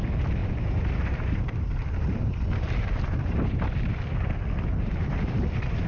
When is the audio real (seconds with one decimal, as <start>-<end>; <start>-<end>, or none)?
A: 0.0-0.4; 3.9-4.7; 5.3-5.9